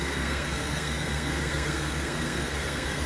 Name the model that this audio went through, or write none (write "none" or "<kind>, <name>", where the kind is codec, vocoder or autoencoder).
codec, SNAC